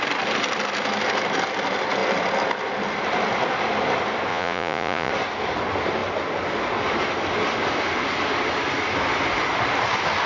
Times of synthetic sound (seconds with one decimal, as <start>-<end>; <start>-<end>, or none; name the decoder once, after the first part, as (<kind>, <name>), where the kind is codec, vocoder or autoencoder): 4.3-5.1 (vocoder, Vocos)